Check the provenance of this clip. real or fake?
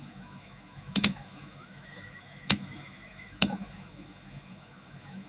fake